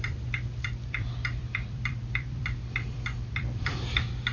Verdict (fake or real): fake